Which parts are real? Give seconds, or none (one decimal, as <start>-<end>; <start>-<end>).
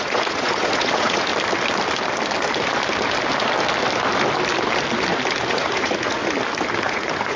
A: 1.3-5.5; 6.2-6.8